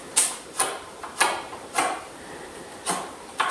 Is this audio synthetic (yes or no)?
no